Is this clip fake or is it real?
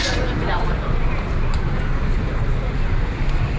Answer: real